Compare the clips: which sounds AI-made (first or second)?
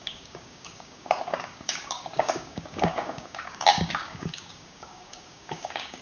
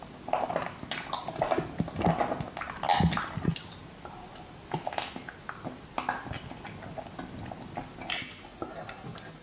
first